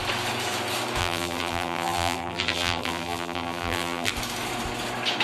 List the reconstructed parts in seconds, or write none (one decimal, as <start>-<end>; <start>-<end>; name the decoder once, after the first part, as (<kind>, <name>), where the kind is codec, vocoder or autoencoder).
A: 1.0-4.1 (vocoder, BigVGAN v2)

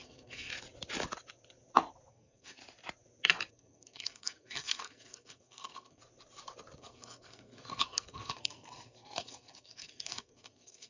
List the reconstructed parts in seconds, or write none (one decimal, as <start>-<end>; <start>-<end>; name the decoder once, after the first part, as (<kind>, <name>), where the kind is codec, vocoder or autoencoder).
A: 0.0-0.5 (codec, SNAC); 2.1-2.6; 3.5-6.0; 6.8-10.9